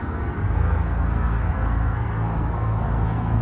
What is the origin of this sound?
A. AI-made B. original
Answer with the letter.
A